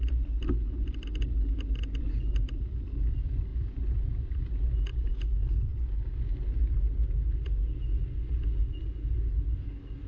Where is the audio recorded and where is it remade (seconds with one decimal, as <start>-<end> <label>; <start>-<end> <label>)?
0.0-3.5 recorded; 3.5-4.5 remade; 4.5-10.1 recorded